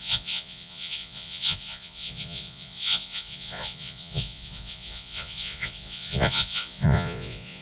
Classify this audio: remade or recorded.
remade